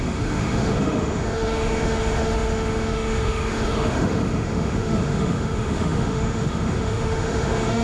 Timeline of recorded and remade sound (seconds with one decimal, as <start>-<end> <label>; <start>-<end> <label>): 0.0-7.8 remade